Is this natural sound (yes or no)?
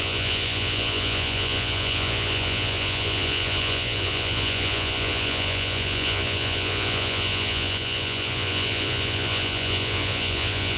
no